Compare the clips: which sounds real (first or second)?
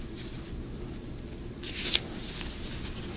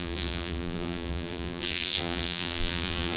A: first